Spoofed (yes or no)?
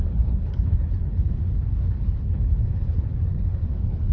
yes